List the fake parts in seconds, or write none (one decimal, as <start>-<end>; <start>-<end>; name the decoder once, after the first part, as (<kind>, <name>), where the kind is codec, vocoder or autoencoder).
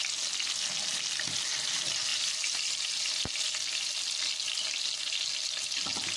none